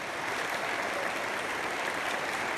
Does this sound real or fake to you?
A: real